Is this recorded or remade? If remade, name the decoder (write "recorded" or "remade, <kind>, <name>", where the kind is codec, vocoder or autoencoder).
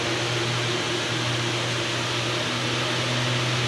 recorded